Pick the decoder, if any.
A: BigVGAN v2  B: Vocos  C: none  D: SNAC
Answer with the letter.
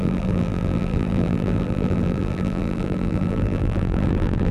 A